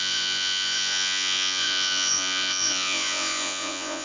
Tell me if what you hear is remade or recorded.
remade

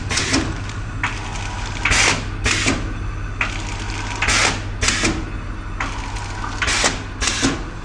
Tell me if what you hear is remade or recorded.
recorded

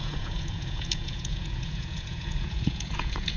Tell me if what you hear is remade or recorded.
remade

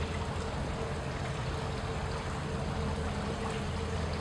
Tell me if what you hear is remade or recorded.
recorded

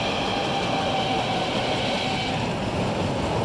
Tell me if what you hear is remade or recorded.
recorded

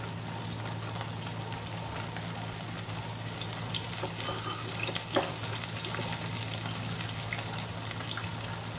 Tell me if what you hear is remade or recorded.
recorded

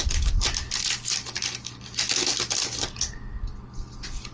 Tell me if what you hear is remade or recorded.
recorded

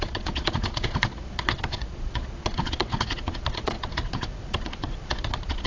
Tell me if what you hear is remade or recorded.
remade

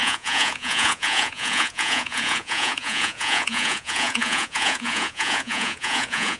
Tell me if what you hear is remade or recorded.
remade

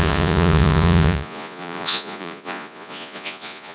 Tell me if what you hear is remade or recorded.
remade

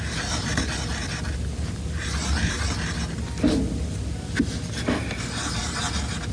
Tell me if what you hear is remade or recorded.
recorded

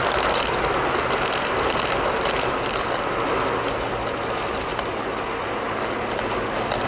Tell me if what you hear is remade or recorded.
recorded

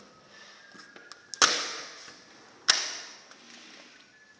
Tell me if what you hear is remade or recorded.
recorded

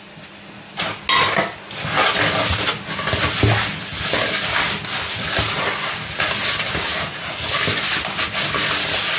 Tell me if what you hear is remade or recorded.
recorded